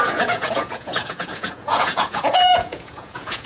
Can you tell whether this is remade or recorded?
remade